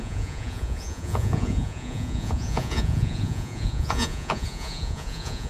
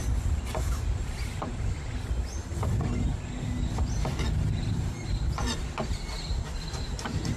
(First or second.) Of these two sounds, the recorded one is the second